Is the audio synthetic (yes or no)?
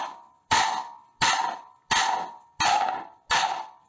no